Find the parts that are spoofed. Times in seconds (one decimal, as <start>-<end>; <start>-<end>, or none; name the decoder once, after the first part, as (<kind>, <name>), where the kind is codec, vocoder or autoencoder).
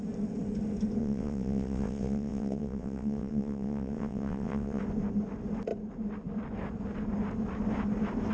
1.0-4.8 (vocoder, WaveNeXt)